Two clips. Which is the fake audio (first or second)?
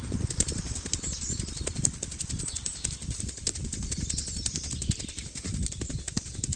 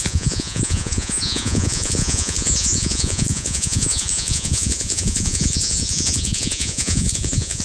second